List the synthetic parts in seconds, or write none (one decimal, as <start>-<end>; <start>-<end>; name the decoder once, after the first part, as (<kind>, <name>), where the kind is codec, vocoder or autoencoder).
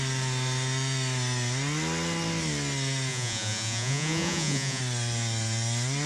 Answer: 3.1-4.8 (vocoder, Vocos)